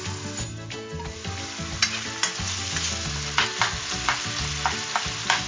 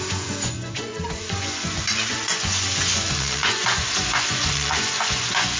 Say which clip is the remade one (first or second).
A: second